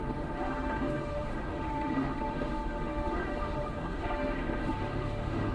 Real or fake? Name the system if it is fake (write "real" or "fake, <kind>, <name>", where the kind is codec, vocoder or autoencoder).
fake, autoencoder, DAC-VAE